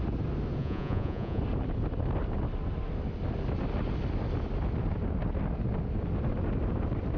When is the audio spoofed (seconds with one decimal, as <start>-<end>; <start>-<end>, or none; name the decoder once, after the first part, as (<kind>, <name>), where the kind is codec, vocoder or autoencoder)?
0.6-1.4 (vocoder, Vocos)